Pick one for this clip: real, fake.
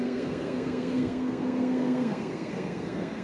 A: fake